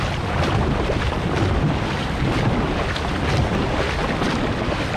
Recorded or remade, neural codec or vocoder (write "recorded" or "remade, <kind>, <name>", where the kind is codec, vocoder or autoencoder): recorded